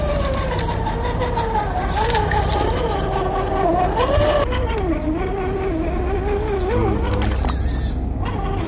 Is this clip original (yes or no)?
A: yes